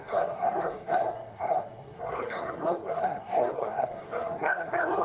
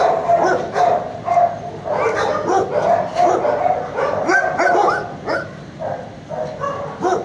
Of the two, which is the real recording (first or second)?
second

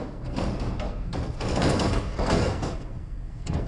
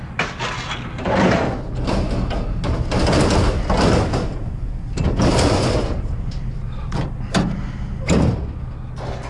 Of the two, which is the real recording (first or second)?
second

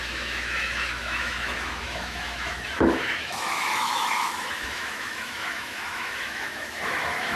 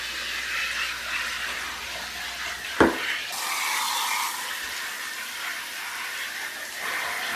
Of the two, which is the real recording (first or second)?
second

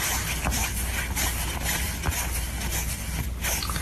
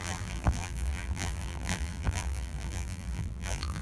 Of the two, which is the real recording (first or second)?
first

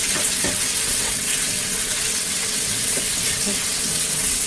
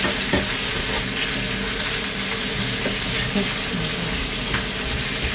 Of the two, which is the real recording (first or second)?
second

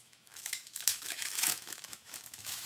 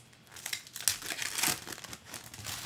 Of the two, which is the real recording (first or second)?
second